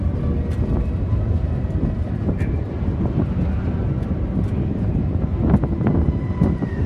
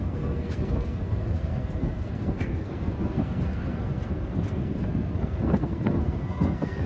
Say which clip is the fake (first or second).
second